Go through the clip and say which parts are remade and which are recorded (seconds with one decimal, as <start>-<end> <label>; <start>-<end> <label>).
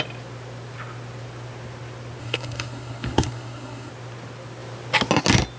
0.0-2.2 recorded; 2.2-3.9 remade; 3.9-5.6 recorded